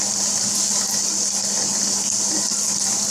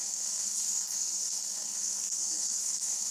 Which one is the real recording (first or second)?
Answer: first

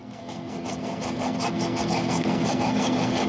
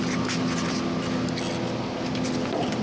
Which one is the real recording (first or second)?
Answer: second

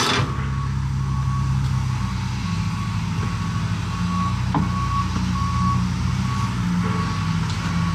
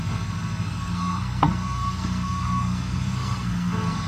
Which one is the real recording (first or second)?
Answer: first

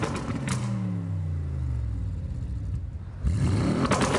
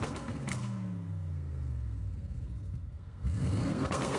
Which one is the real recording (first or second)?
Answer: first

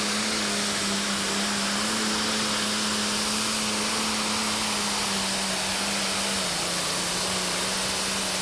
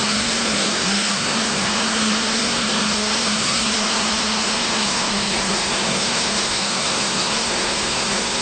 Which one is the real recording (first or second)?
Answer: first